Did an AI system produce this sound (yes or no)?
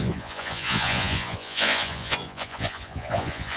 yes